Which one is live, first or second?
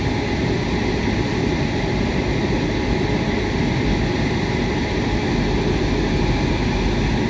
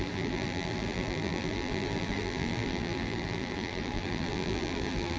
first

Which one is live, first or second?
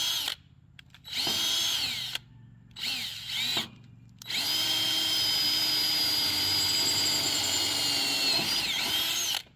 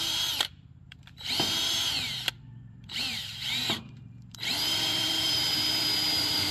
first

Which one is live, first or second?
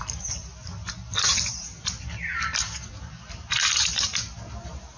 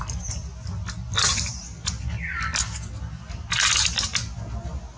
second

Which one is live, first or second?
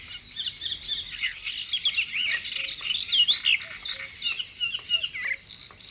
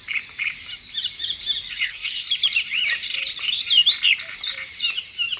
first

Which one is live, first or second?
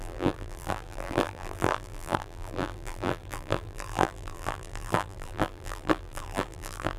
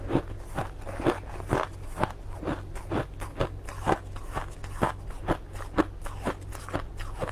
second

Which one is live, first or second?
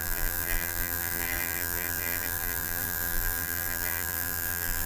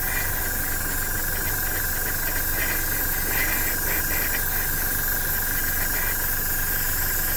second